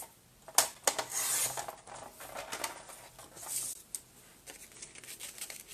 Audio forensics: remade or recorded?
recorded